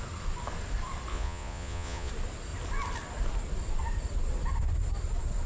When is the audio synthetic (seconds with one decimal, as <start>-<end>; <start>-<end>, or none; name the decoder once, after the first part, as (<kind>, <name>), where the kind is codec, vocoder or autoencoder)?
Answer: 1.1-2.1 (vocoder, Vocos)